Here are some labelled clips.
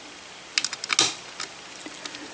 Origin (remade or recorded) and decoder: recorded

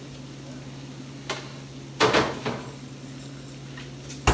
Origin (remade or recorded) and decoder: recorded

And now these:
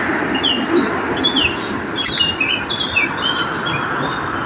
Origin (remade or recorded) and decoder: recorded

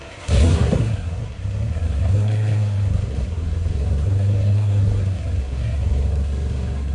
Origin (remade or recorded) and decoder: remade, codec, SNAC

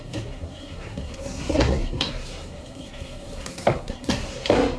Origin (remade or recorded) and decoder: remade, codec, SNAC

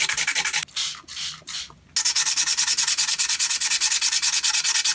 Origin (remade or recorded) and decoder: recorded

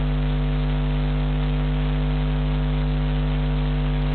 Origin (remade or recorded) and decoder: recorded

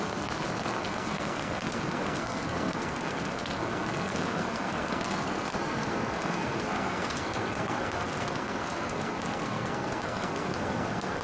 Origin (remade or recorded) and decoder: remade, codec, SNAC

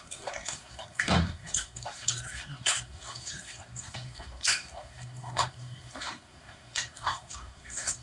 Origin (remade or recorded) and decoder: remade, codec, SNAC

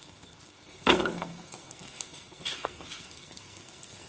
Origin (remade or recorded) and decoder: remade, codec, SNAC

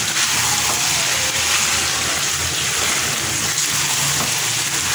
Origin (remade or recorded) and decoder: recorded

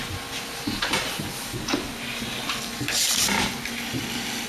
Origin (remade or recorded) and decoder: recorded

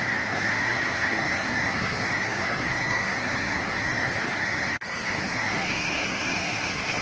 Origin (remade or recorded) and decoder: remade, codec, SNAC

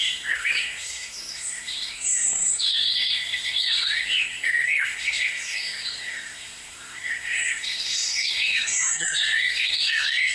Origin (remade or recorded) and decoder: remade, codec, SNAC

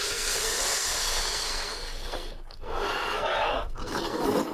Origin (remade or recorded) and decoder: remade, codec, SNAC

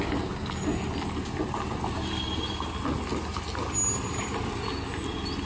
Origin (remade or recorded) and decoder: recorded